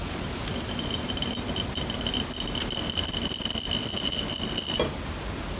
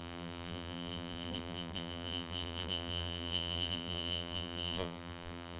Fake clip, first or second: second